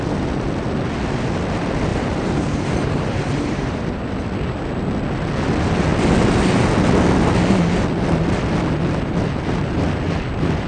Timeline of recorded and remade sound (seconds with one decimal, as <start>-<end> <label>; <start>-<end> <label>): 0.0-1.9 recorded; 1.9-4.0 remade; 4.0-10.7 recorded